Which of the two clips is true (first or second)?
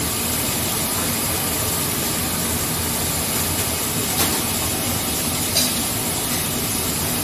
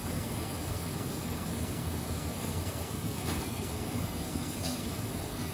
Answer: first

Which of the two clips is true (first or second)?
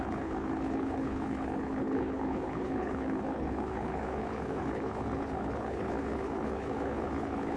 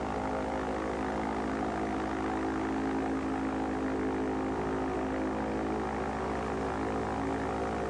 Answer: second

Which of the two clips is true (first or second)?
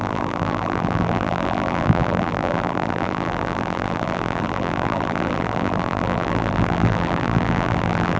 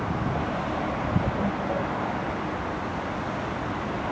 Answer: second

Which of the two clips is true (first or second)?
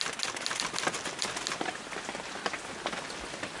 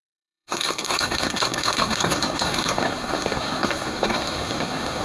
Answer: first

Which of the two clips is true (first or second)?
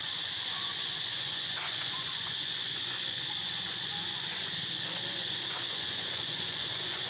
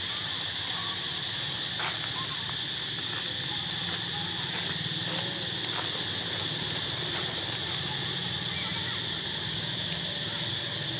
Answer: second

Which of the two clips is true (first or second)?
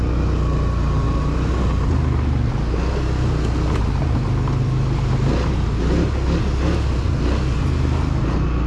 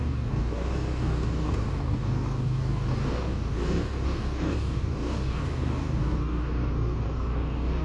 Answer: first